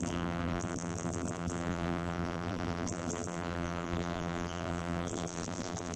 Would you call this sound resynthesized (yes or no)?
yes